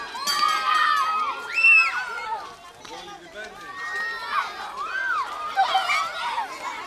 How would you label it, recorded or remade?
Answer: recorded